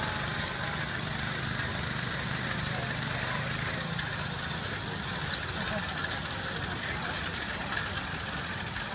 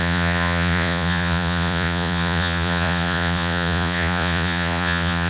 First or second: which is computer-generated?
second